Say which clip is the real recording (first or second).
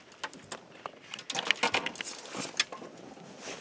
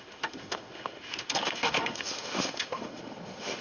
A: first